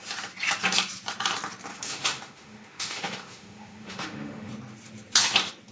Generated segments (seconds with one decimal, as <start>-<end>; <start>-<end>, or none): 1.7-4.5